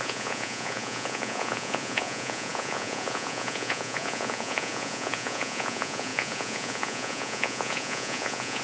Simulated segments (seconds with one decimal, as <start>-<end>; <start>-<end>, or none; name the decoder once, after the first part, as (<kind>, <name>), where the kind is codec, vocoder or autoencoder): 0.0-8.6 (vocoder, Vocos)